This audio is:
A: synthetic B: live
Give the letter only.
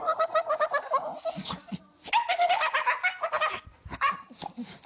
B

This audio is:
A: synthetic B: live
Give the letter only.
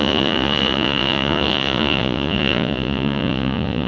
A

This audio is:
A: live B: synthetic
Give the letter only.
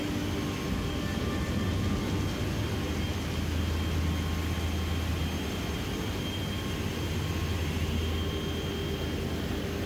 A